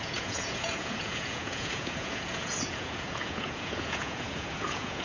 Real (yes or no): no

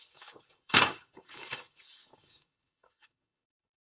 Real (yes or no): no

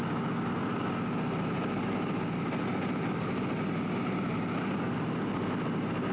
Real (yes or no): yes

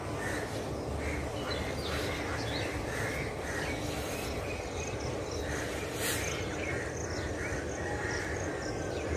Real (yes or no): yes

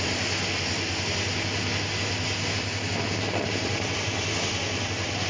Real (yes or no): yes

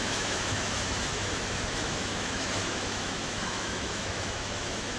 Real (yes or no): no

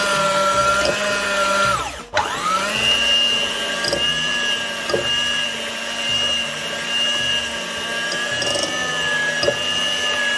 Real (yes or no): yes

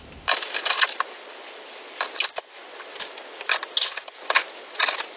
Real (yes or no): yes